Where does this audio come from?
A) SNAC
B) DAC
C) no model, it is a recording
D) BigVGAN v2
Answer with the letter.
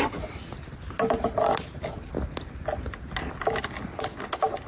C